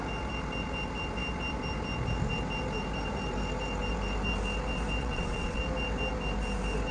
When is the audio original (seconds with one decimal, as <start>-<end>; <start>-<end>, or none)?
0.0-5.0; 5.6-6.9